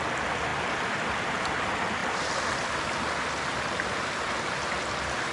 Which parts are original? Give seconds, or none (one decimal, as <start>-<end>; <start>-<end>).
0.0-5.3